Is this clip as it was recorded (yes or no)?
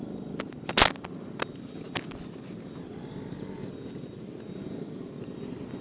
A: yes